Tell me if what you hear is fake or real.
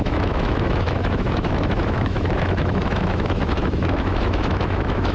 fake